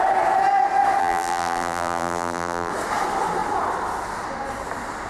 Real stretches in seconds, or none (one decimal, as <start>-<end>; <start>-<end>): 0.0-1.0; 2.7-5.1